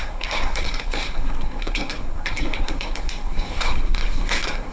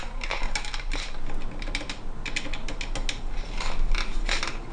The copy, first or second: first